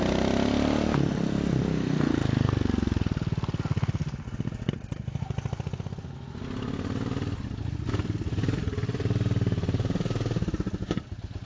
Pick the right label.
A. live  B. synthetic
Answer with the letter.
A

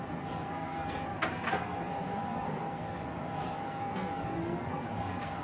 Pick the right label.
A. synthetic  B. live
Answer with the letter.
A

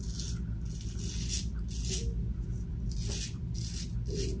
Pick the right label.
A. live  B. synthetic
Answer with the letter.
A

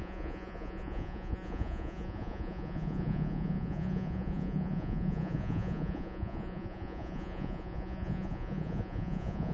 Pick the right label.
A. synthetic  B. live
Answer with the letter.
A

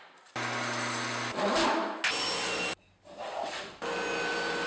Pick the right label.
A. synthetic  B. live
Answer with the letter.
B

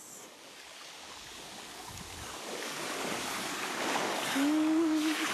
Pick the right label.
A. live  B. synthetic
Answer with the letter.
B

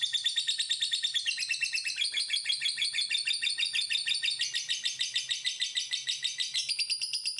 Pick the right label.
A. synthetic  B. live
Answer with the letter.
B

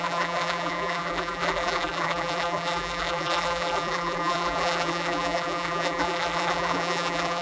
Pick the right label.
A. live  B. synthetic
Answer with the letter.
B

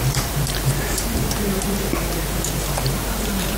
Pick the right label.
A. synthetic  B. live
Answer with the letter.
A